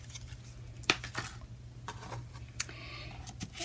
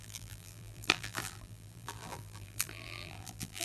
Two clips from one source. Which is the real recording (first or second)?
first